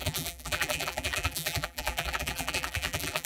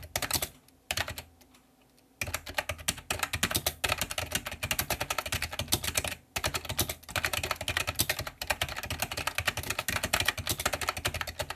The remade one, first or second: first